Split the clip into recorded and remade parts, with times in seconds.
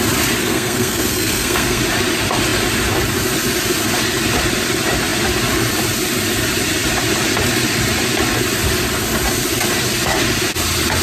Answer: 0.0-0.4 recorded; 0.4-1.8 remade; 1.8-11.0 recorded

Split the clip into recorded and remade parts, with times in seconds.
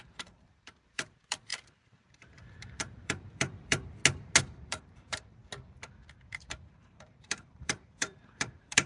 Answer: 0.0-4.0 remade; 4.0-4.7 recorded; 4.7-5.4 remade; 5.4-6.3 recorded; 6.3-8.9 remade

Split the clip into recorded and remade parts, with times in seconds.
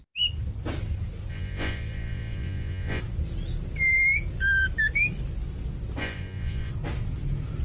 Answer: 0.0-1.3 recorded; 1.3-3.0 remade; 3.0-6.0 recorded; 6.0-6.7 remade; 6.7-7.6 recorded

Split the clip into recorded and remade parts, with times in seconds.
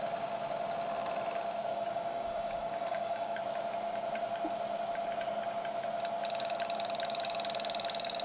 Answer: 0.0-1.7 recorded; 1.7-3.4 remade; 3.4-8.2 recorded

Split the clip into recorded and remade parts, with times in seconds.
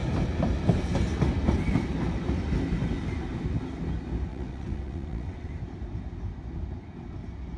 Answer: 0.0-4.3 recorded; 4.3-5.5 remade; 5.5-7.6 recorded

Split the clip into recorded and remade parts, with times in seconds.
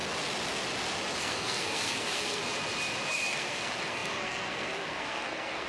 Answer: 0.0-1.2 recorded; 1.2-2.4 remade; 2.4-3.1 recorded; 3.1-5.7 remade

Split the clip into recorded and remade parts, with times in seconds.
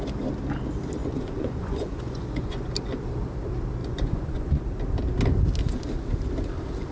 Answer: 0.0-1.0 recorded; 1.0-2.7 remade; 2.7-3.8 recorded; 3.8-4.6 remade; 4.6-6.9 recorded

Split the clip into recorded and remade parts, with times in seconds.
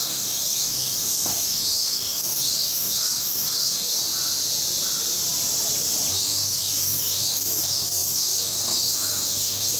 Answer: 0.0-4.0 remade; 4.0-6.1 recorded; 6.1-9.8 remade